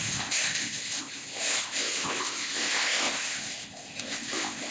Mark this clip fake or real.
fake